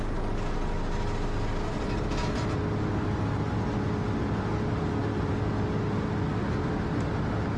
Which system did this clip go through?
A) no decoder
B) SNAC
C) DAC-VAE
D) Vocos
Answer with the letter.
A